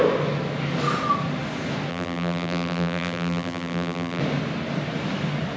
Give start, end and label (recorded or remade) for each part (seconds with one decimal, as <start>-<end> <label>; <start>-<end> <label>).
0.0-1.9 recorded; 1.9-4.2 remade; 4.2-5.6 recorded